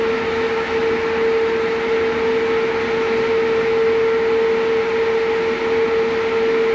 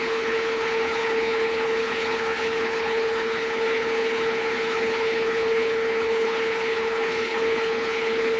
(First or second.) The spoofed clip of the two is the second